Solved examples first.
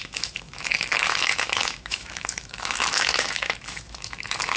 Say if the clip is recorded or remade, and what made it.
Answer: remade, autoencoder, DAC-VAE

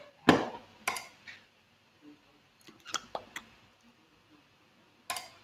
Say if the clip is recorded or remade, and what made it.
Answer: recorded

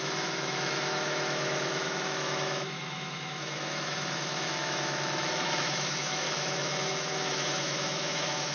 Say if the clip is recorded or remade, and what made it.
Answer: remade, autoencoder, DAC-VAE